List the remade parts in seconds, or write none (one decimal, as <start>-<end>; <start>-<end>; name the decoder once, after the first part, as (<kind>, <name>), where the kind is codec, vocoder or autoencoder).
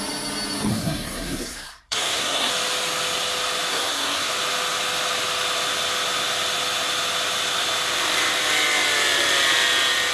0.7-2.5 (codec, SNAC); 3.7-4.3